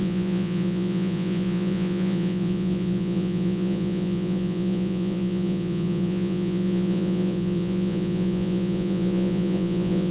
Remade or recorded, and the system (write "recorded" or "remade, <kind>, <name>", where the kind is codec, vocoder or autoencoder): remade, vocoder, Vocos